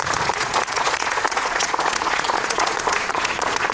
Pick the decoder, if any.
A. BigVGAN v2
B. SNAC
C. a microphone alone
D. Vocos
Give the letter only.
D